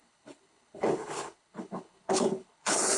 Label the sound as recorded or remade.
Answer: remade